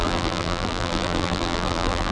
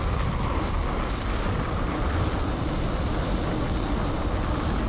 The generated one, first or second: first